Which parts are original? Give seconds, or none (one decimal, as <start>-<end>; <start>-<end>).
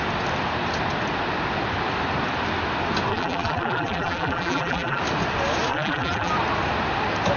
0.0-3.1; 5.0-5.7; 6.3-7.4